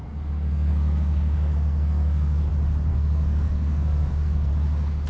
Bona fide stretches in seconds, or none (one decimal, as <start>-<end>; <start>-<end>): 2.5-2.9; 4.5-5.1